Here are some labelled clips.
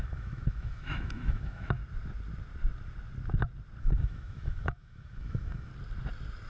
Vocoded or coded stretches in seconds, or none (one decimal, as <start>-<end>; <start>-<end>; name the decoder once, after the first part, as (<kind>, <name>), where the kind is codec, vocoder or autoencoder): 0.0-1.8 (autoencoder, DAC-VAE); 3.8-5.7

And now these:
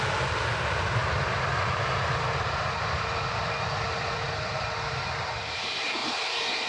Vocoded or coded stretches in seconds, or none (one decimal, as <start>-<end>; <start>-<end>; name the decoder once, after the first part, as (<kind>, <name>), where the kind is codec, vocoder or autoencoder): 0.0-6.0 (vocoder, BigVGAN v2)

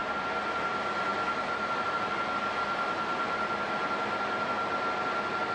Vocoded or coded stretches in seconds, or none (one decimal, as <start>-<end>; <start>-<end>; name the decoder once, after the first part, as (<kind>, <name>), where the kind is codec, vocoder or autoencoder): none

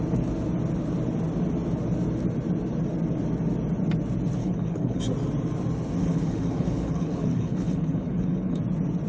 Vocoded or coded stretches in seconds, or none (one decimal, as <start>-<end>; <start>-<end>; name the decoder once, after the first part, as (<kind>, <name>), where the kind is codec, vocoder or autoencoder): 4.4-5.0 (codec, HILCodec); 6.0-8.6

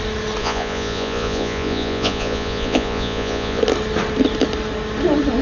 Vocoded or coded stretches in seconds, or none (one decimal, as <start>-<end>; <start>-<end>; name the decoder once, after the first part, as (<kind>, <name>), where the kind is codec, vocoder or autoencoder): 0.4-3.6 (vocoder, Vocos)

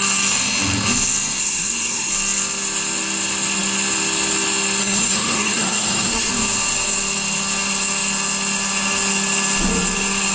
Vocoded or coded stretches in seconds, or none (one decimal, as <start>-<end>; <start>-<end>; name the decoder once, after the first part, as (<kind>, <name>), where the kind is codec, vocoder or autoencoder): 1.4-2.1 (codec, SNAC); 4.8-6.3

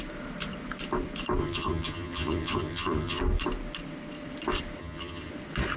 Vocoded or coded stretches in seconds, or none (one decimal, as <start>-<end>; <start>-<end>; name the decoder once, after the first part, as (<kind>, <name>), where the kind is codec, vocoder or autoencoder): 1.4-3.2 (vocoder, HiFi-GAN); 4.8-5.3